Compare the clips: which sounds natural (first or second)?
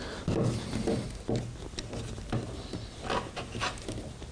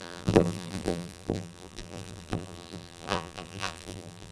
first